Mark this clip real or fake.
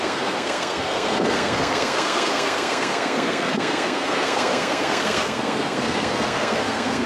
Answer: fake